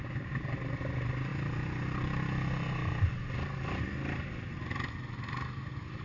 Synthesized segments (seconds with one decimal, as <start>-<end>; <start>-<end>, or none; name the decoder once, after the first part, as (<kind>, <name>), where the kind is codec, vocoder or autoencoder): none